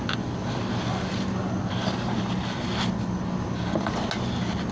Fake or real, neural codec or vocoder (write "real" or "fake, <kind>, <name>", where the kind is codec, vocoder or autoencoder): real